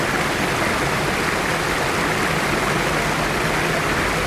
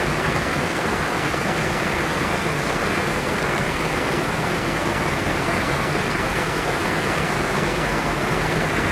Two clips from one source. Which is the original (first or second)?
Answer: first